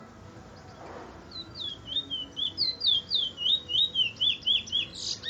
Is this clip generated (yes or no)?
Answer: no